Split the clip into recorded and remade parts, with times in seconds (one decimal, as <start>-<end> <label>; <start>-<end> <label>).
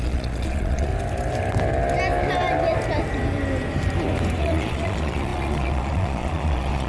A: 0.0-0.9 remade; 0.9-4.4 recorded; 4.4-6.9 remade